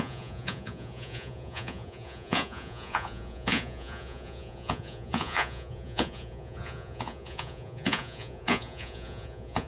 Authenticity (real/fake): fake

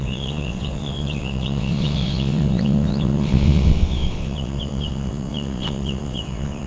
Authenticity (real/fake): fake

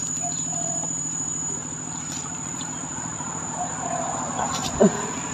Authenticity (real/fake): fake